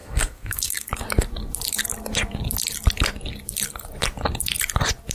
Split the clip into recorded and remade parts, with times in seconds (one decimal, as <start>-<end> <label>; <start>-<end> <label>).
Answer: 0.0-0.9 remade; 0.9-5.1 recorded